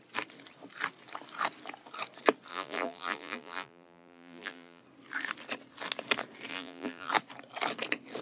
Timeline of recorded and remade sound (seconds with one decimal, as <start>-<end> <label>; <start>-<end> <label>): 0.0-2.5 recorded; 2.5-4.8 remade; 4.8-6.5 recorded; 6.5-7.1 remade; 7.1-8.2 recorded